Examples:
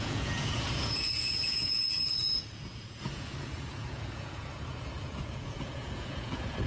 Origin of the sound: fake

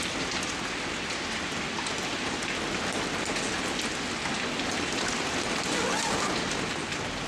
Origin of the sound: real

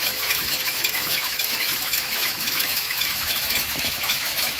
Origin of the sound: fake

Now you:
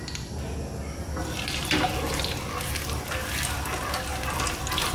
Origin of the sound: real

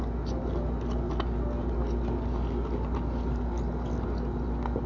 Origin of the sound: real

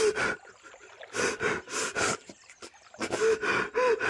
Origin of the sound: real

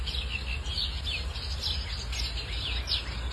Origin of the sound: real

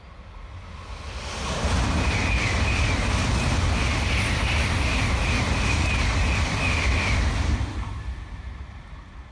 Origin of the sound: real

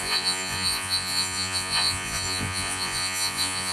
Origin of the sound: fake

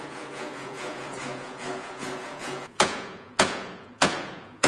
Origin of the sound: fake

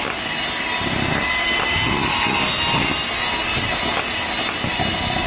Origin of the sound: real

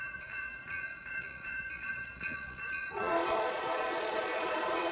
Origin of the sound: fake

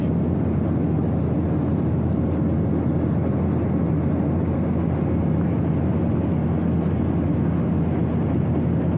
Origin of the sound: real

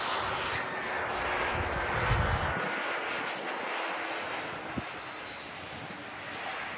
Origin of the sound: real